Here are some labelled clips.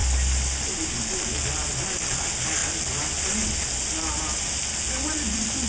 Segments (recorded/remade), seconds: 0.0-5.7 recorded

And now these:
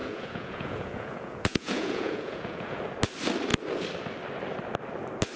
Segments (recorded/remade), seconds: 0.0-2.8 remade; 2.8-5.4 recorded

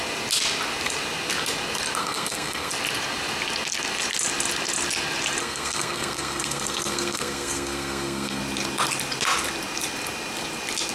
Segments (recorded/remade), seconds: 0.0-2.0 recorded; 2.0-2.7 remade; 2.7-5.4 recorded; 5.4-8.4 remade; 8.4-10.9 recorded

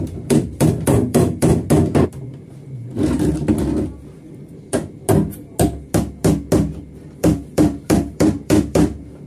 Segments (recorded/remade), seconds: 0.0-1.5 remade; 1.5-2.5 recorded; 2.5-2.9 remade; 2.9-6.8 recorded; 6.8-9.3 remade

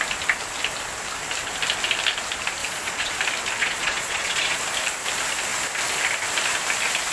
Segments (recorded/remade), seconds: 0.0-2.6 recorded; 2.6-3.2 remade; 3.2-3.6 recorded; 3.6-4.6 remade; 4.6-7.1 recorded